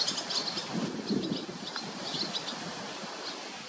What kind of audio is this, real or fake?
real